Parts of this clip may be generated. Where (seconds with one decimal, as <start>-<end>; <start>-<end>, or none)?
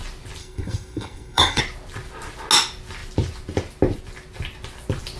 0.4-1.6